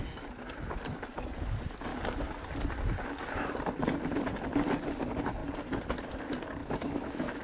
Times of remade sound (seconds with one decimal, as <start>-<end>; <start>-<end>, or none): 6.6-7.4